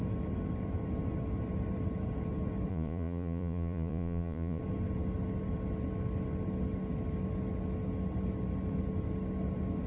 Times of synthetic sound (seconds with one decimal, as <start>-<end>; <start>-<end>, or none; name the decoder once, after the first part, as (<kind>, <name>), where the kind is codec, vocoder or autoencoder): 2.7-4.6 (vocoder, Vocos)